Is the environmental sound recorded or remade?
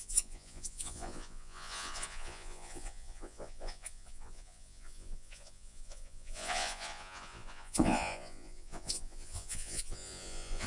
remade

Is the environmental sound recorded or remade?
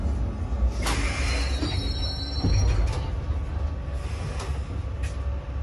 recorded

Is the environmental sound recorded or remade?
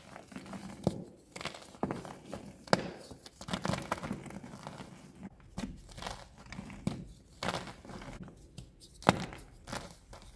recorded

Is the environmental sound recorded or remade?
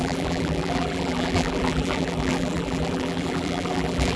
remade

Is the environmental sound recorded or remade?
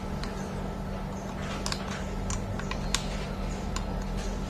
recorded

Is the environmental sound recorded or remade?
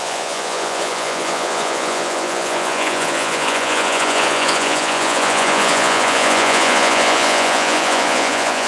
remade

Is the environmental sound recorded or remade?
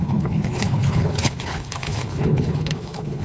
remade